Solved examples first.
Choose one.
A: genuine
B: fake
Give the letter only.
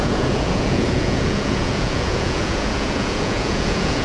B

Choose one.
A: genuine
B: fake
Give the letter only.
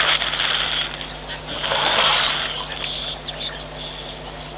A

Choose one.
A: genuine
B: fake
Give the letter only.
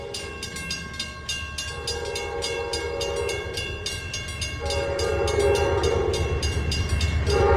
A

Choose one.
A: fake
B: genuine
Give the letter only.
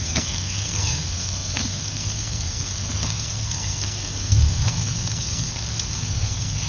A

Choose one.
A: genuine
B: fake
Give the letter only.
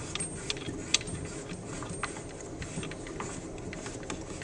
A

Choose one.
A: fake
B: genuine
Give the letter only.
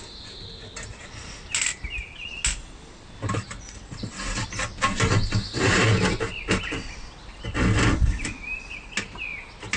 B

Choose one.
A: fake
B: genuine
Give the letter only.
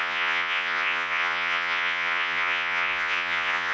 A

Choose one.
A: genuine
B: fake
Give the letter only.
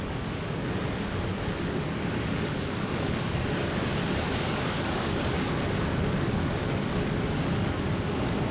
B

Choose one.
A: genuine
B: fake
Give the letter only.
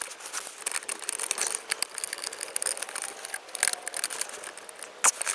A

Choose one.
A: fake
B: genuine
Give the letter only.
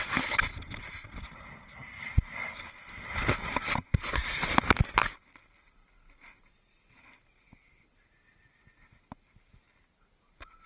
B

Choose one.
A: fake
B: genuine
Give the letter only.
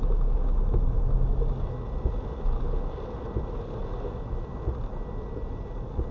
B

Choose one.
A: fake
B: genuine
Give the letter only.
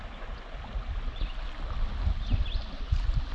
B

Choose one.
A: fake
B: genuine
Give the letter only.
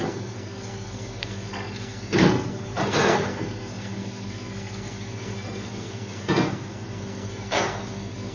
A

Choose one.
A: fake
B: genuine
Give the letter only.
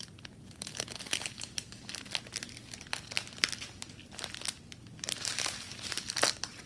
B